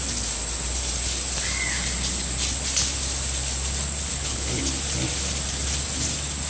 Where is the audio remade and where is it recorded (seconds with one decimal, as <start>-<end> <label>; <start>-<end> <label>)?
0.0-4.1 recorded; 4.1-4.6 remade; 4.6-6.5 recorded